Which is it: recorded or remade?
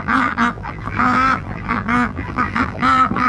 remade